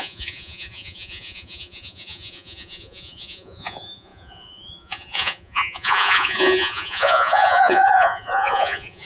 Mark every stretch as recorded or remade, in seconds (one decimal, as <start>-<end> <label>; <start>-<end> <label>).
0.0-9.1 remade